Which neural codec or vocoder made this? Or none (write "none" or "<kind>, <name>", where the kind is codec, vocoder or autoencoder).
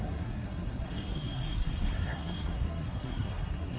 codec, SNAC